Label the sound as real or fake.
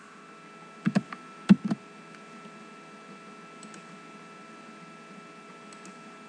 real